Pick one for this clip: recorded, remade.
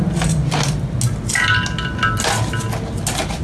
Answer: recorded